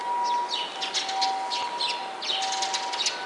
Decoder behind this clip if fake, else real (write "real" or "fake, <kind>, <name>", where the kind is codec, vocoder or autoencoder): real